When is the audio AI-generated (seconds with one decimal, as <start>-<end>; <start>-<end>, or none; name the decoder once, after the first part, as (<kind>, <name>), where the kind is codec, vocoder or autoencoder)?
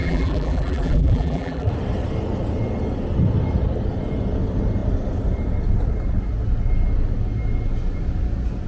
0.0-1.7 (vocoder, BigVGAN v2)